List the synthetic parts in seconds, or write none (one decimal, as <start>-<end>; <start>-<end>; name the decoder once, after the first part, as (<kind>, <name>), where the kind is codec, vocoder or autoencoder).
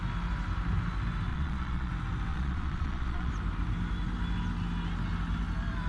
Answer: 1.3-1.9 (vocoder, Vocos); 2.3-3.3